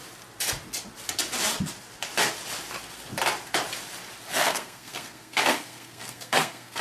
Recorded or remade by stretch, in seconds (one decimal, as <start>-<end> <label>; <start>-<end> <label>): 0.0-4.4 recorded; 4.4-6.8 remade